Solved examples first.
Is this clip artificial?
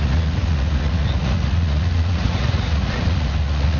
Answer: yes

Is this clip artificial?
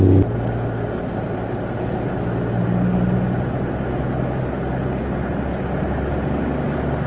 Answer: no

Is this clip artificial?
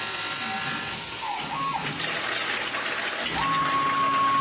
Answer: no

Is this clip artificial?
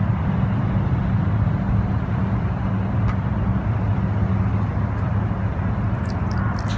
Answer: no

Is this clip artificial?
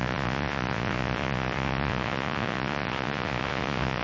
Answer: yes